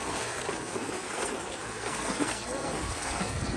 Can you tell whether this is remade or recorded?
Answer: remade